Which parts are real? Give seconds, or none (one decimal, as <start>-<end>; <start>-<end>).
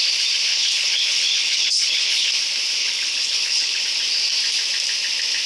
0.0-0.5; 2.3-2.8; 3.8-5.5